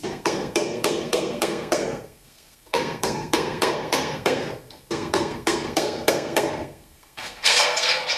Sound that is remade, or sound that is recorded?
remade